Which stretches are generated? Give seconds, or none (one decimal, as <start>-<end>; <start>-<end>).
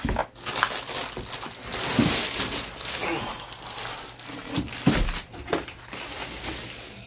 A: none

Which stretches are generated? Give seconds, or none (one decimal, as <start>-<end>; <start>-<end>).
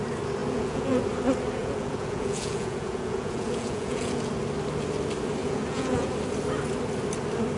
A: 0.4-1.0; 1.6-4.3; 5.4-6.1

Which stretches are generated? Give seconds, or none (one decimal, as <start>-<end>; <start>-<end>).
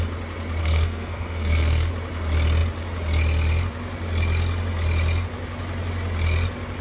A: 0.6-1.9